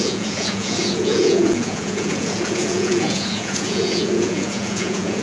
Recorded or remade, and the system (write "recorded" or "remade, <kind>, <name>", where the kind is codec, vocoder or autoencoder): remade, vocoder, Vocos